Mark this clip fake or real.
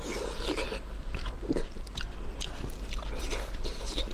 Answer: real